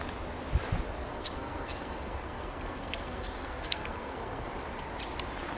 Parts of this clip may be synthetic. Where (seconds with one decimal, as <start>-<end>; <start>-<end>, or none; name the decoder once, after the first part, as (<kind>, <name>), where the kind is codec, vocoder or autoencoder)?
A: 1.1-4.5 (codec, SNAC)